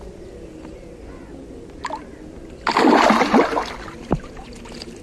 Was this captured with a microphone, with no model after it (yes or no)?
yes